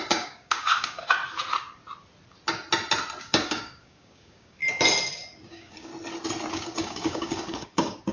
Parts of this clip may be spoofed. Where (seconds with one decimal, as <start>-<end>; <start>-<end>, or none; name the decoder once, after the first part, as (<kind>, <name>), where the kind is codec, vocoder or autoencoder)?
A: 0.0-1.2 (codec, DAC); 3.2-4.6; 5.5-5.9; 6.5-8.1